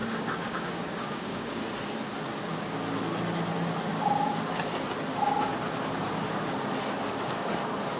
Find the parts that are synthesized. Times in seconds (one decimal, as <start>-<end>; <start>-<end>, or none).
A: 0.0-1.6